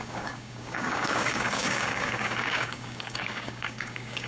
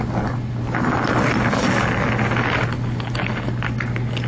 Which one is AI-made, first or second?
first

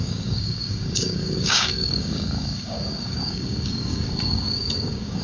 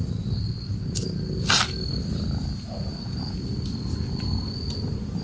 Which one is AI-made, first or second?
first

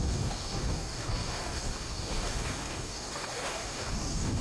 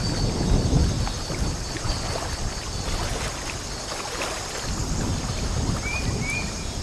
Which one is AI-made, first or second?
first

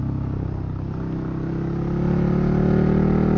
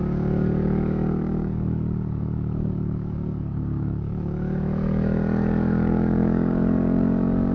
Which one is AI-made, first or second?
second